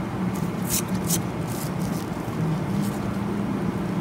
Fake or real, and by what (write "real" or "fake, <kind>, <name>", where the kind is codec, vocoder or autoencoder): real